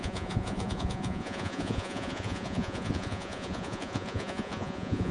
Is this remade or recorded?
remade